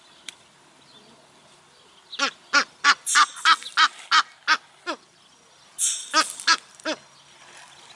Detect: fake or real real